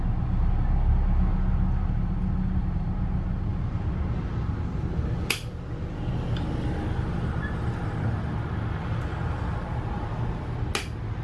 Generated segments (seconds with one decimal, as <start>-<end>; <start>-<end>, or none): none